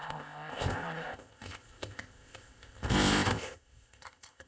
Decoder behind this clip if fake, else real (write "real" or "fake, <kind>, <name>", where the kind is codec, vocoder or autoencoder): fake, codec, ZipCodec